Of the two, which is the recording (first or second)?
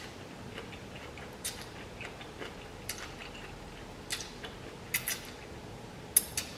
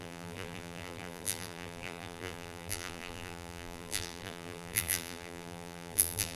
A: first